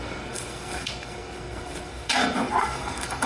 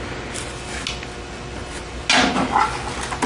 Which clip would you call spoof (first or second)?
first